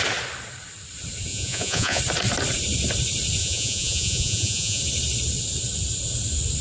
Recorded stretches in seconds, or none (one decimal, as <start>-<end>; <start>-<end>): 0.0-1.3; 2.0-3.4; 4.8-6.6